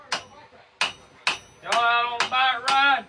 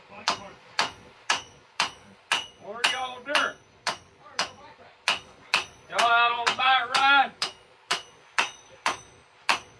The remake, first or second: second